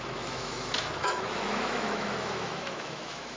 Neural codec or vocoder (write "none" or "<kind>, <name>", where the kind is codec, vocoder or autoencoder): autoencoder, DAC-VAE